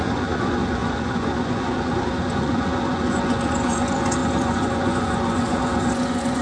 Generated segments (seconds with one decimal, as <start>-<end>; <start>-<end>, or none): 0.0-6.4

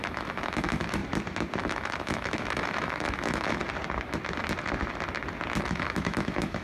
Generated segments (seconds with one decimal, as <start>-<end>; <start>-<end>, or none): 0.0-1.0; 1.6-3.6; 5.6-6.6

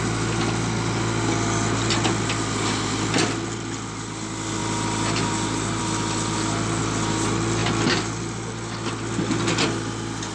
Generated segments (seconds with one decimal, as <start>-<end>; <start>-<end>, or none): none

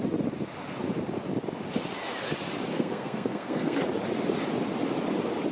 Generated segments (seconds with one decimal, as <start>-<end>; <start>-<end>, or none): 2.7-3.8

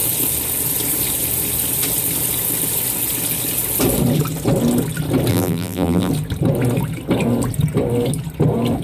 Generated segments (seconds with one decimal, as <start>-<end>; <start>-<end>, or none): 5.3-6.1